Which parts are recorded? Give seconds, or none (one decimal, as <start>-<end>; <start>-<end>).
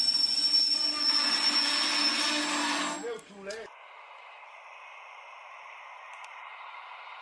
0.0-7.2